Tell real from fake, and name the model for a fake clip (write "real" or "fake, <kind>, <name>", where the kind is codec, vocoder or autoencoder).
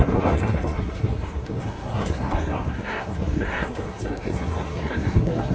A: fake, codec, SNAC